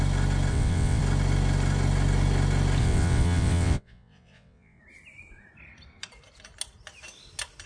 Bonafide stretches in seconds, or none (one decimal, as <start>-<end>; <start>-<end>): 0.0-0.5; 1.0-2.8; 4.8-7.7